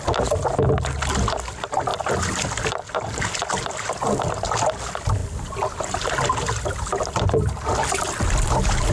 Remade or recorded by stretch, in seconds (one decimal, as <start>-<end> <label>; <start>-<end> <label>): 0.0-8.9 recorded